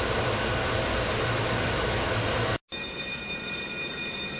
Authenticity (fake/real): real